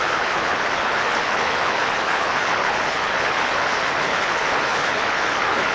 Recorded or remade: remade